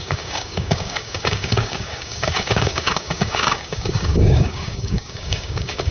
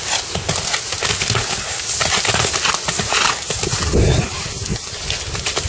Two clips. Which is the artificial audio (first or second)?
first